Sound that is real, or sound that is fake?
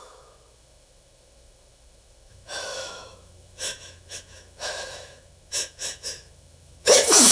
fake